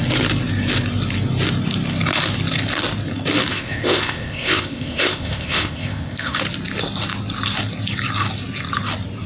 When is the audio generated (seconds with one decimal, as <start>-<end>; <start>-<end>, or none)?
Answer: 3.5-6.4